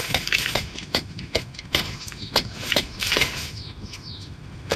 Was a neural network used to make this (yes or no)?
yes